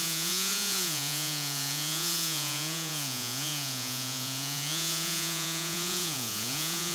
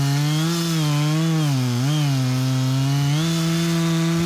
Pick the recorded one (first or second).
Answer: second